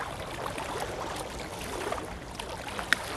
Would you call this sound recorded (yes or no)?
yes